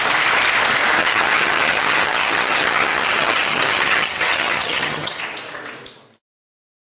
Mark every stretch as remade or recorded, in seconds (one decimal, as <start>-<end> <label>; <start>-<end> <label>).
0.0-1.0 recorded; 1.0-5.2 remade; 5.2-7.0 recorded